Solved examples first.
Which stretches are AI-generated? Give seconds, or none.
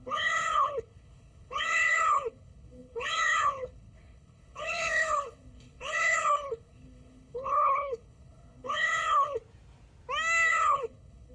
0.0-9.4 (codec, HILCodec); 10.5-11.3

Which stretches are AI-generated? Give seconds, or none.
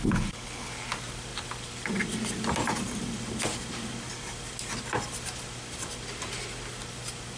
0.0-0.7 (codec, HILCodec)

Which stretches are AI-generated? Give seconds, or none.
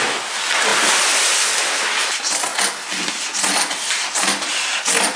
none